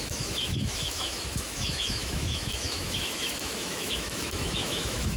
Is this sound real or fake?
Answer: fake